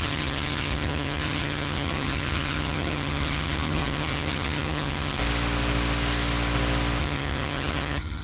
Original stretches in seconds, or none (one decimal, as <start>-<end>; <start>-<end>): 5.2-7.0